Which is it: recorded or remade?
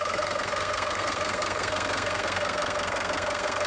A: remade